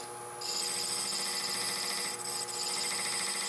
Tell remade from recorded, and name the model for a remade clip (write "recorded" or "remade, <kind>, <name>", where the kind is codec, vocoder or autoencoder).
recorded